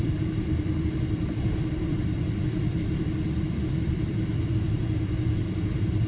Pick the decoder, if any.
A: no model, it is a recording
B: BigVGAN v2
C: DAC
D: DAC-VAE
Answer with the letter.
B